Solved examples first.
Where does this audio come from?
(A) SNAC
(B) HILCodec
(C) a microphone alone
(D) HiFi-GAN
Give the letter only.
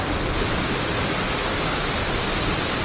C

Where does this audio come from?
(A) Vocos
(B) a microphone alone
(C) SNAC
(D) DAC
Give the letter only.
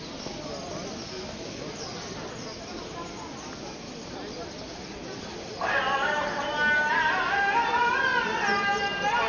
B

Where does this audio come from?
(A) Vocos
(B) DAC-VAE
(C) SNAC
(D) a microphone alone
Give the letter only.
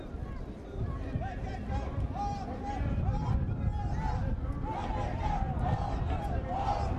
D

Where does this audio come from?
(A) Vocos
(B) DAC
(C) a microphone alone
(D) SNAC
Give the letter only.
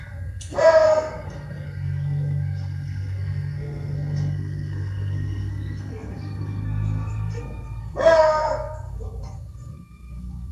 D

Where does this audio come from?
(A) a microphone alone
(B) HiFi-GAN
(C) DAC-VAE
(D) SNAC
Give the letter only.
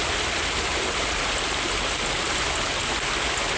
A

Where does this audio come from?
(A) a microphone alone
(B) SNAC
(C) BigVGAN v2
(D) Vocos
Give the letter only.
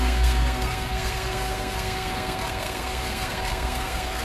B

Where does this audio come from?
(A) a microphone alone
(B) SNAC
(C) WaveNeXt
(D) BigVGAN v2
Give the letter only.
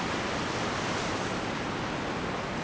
A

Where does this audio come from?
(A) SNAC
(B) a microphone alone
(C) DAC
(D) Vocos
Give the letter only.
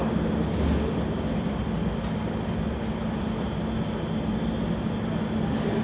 B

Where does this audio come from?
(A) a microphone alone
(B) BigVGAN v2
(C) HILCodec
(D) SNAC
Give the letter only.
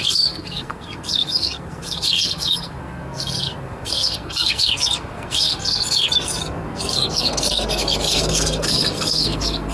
D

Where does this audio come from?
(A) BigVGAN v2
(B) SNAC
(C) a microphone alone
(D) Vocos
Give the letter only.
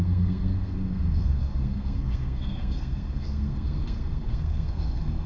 B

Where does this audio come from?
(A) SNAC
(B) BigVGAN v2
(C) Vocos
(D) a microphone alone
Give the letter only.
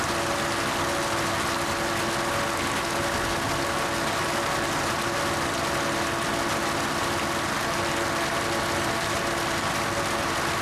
D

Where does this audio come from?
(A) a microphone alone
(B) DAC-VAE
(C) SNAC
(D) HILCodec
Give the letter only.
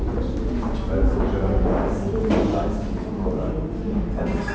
A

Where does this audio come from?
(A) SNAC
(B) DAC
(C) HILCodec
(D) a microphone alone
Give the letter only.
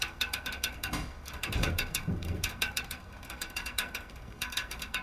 A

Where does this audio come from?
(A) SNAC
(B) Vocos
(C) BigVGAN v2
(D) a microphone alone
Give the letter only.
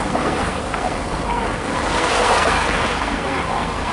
A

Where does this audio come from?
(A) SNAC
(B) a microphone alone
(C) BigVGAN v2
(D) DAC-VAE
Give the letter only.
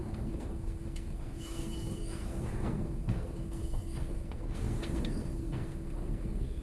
A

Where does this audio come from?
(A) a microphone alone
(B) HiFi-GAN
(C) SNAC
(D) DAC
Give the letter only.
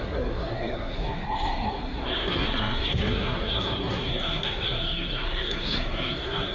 C